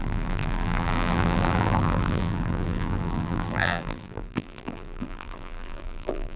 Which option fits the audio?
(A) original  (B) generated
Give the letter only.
B